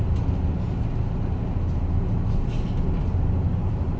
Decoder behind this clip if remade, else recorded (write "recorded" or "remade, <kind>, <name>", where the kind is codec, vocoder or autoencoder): recorded